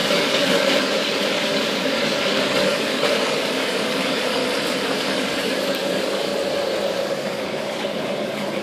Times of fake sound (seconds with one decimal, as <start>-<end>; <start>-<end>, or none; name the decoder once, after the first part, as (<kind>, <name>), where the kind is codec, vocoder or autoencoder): 0.0-4.4 (codec, DAC); 5.0-6.3; 6.9-8.6